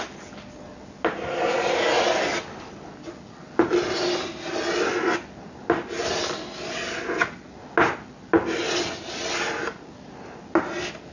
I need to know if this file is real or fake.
real